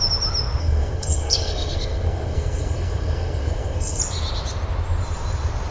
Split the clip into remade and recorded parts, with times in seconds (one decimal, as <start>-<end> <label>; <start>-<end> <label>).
0.0-0.6 recorded; 0.6-4.0 remade; 4.0-5.7 recorded